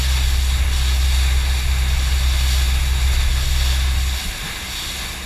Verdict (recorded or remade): recorded